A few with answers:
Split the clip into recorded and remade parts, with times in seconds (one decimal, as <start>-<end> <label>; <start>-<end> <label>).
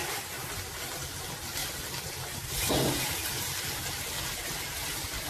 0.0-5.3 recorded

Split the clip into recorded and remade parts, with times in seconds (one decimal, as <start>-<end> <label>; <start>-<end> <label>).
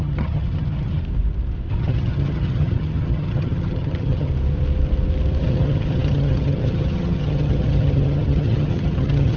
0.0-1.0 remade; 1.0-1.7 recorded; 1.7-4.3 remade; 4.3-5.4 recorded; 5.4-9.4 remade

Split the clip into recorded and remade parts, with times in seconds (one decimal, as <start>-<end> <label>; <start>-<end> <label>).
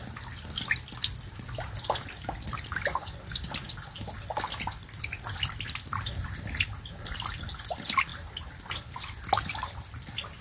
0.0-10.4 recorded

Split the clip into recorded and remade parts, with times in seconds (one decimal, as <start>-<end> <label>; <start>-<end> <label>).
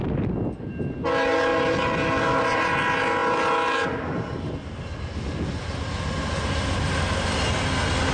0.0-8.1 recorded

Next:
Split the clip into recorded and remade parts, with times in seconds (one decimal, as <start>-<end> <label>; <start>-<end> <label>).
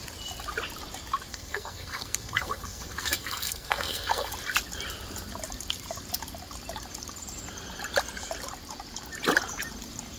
0.0-1.3 recorded; 1.3-4.3 remade; 4.3-10.2 recorded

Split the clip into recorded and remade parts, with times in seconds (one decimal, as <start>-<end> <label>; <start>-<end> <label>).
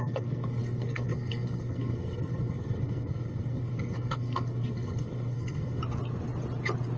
0.0-5.8 remade; 5.8-7.0 recorded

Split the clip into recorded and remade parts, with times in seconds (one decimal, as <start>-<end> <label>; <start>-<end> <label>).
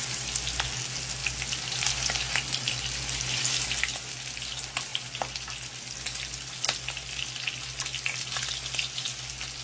0.0-9.6 recorded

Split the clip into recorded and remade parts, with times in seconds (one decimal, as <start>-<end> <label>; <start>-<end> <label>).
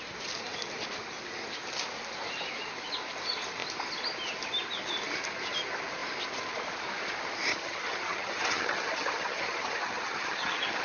0.0-7.5 recorded; 7.5-10.8 remade